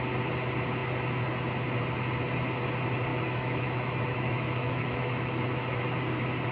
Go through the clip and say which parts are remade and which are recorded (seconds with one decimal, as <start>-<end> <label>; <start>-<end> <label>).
0.0-3.1 recorded; 3.1-5.8 remade; 5.8-6.5 recorded